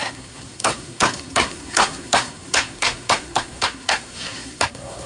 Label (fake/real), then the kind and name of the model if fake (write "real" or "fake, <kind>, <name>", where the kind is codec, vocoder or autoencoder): fake, codec, SNAC